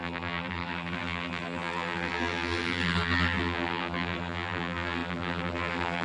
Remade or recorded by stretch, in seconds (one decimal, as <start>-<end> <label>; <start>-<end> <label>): 0.0-6.0 remade